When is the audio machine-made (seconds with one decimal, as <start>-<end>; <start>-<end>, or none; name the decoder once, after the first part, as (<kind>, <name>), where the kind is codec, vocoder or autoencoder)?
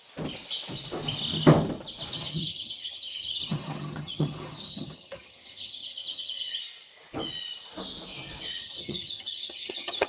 2.1-6.6 (vocoder, HiFi-GAN); 8.6-10.1